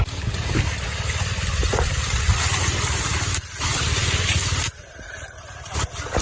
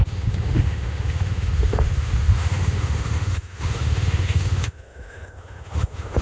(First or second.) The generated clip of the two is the second